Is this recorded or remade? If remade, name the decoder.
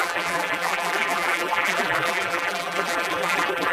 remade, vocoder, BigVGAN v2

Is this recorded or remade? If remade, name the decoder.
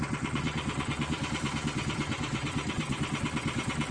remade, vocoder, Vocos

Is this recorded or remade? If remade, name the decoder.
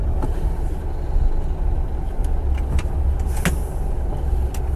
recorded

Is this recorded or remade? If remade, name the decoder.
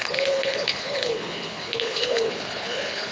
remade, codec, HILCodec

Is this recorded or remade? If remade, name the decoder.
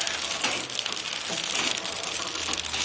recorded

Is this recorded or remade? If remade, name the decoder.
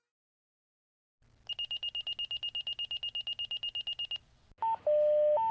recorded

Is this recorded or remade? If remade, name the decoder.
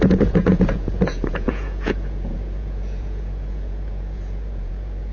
remade, vocoder, Vocos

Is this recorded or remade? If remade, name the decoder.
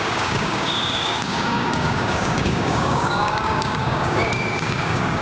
remade, codec, DAC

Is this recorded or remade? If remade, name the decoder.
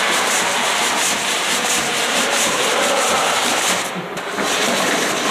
remade, vocoder, BigVGAN v2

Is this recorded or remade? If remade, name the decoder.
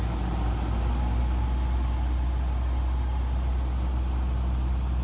recorded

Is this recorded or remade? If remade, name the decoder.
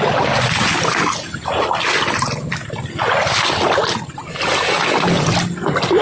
recorded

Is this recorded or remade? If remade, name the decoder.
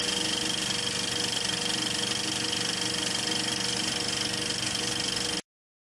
recorded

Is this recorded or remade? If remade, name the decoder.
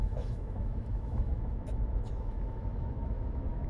remade, autoencoder, DAC-VAE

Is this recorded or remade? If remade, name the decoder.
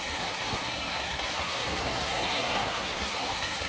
remade, codec, SNAC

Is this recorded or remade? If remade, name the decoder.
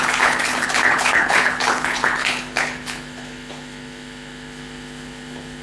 remade, codec, HILCodec